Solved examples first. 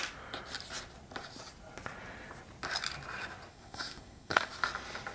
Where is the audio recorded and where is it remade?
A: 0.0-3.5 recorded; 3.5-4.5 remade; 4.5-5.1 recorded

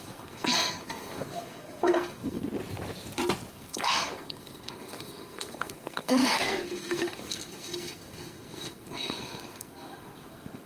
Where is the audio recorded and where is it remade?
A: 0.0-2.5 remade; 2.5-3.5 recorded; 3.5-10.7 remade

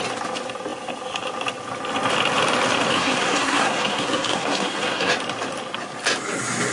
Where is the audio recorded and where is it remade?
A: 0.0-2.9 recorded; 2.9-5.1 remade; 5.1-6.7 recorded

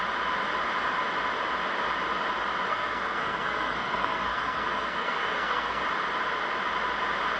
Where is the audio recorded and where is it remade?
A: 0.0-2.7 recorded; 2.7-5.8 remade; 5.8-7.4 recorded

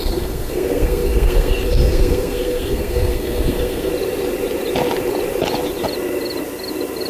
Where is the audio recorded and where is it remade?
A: 0.0-3.9 remade; 3.9-7.1 recorded